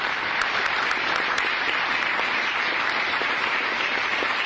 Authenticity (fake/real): real